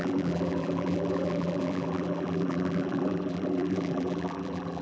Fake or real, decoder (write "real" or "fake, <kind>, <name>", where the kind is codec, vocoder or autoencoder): fake, vocoder, BigVGAN v2